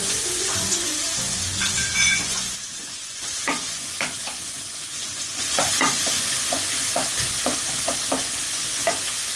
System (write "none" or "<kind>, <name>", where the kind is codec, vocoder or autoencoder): vocoder, Vocos